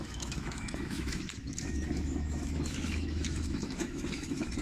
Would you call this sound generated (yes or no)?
yes